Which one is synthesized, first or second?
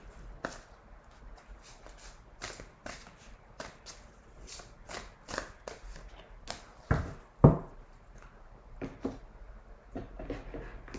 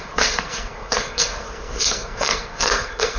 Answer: second